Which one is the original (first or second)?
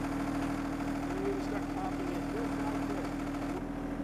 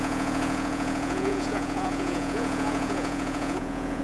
first